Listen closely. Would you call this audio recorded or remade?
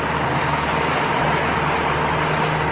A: recorded